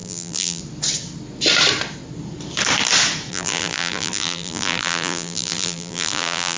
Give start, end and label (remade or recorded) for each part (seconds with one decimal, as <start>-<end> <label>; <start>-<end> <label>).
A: 0.0-0.6 remade; 0.6-3.3 recorded; 3.3-6.6 remade